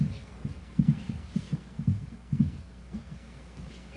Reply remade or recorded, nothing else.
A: remade